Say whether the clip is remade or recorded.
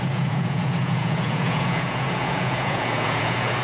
remade